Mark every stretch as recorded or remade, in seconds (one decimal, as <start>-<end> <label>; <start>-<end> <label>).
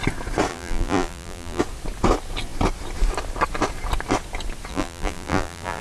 0.0-0.5 recorded; 0.5-1.6 remade; 1.6-4.7 recorded; 4.7-5.8 remade